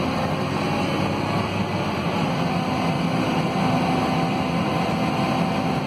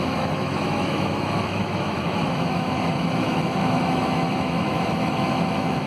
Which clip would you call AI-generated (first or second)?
second